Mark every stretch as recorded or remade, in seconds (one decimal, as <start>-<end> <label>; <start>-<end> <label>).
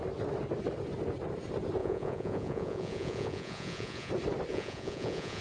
0.0-1.8 recorded; 1.8-4.1 remade; 4.1-4.5 recorded; 4.5-5.4 remade